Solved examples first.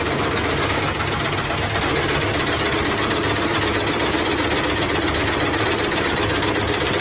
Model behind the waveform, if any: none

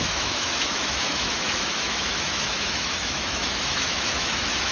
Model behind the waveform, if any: autoencoder, DAC-VAE